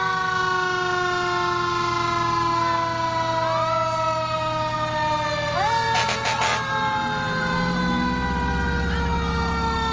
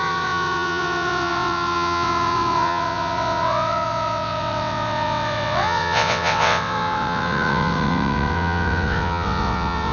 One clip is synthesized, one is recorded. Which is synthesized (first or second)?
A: second